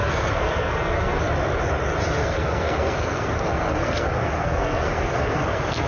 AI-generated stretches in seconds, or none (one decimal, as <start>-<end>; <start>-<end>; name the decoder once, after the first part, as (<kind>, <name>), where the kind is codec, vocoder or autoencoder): 0.0-1.2 (codec, SNAC); 2.2-5.9